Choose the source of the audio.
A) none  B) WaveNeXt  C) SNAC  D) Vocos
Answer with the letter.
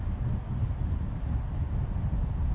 A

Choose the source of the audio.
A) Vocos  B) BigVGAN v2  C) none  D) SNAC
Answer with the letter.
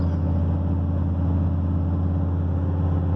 C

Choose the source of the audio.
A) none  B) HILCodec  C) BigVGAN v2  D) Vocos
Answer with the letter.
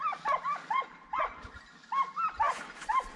A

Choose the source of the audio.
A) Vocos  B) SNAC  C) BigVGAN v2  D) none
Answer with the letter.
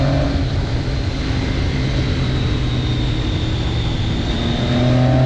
D